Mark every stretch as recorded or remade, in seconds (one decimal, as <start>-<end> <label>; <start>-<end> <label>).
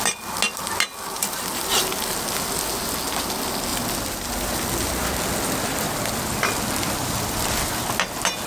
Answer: 0.0-3.7 recorded; 3.7-7.7 remade; 7.7-8.5 recorded